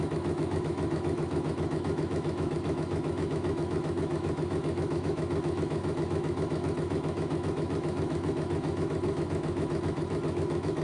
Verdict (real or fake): fake